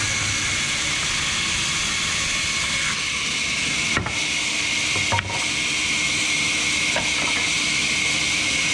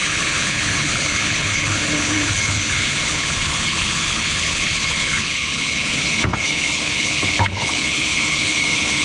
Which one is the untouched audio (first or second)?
first